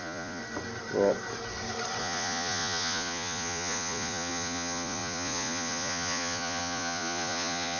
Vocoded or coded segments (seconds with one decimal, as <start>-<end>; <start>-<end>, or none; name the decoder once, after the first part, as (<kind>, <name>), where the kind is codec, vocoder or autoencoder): 0.0-0.4 (vocoder, Vocos); 2.0-7.8